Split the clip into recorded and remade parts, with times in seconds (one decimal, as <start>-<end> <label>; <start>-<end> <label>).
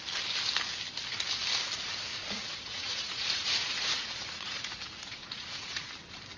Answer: 0.0-2.1 recorded; 2.1-5.9 remade; 5.9-6.4 recorded